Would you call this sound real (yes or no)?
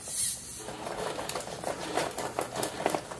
yes